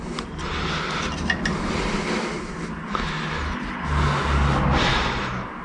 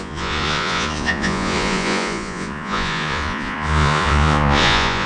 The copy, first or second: second